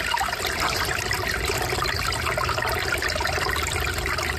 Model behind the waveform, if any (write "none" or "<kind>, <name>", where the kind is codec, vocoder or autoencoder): none